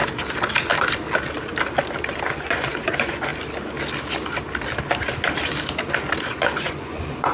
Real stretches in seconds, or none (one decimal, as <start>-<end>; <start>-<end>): 0.0-2.2; 3.3-6.2